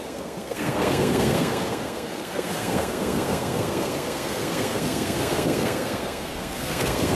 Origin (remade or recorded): remade